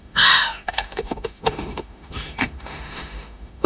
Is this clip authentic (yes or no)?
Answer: no